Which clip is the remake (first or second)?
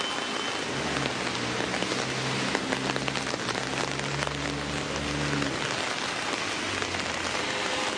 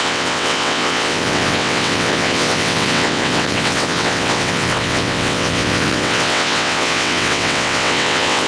second